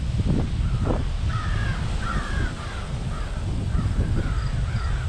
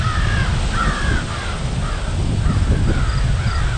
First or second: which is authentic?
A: second